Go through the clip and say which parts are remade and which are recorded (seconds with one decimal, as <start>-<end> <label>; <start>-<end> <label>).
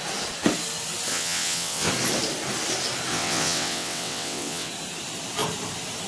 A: 0.0-1.1 recorded; 1.1-1.9 remade; 1.9-3.1 recorded; 3.1-4.7 remade; 4.7-6.1 recorded